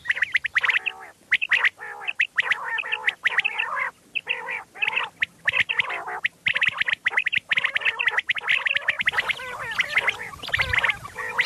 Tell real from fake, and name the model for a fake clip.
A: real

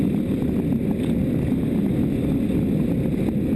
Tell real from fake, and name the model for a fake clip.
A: real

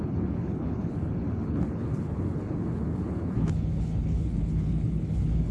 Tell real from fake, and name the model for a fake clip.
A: fake, codec, HILCodec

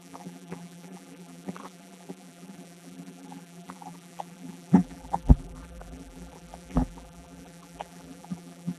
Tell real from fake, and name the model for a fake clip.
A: fake, vocoder, BigVGAN v2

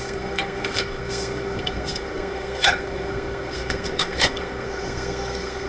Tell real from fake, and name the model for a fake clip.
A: fake, codec, SNAC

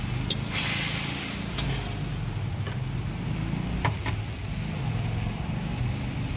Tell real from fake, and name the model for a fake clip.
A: real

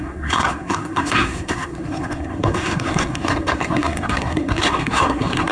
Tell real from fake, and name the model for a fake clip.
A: fake, codec, SNAC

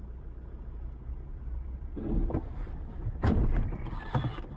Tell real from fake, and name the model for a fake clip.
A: real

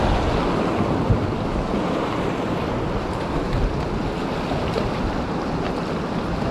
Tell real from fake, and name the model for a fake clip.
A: real